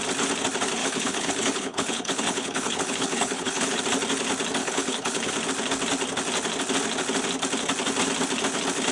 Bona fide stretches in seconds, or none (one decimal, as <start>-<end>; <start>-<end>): 0.0-0.8; 3.8-4.6; 5.3-8.9